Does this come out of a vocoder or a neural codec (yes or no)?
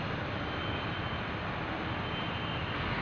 no